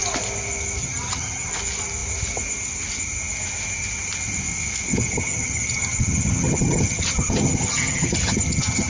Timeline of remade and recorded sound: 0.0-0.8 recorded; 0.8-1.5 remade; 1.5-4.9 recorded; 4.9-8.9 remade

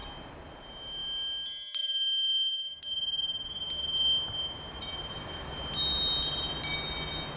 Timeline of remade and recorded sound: 0.0-7.4 recorded

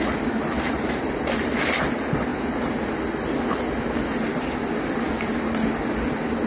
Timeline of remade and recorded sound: 0.0-6.5 recorded

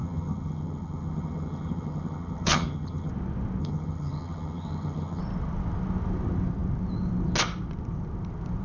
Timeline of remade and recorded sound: 0.0-3.1 remade; 3.1-3.6 recorded; 3.6-5.2 remade; 5.2-8.6 recorded

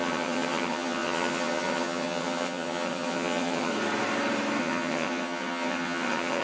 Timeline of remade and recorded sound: 0.0-3.7 remade; 3.7-4.6 recorded; 4.6-6.4 remade

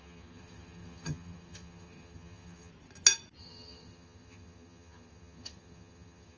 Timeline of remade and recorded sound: 0.0-2.7 remade; 2.7-3.4 recorded; 3.4-6.4 remade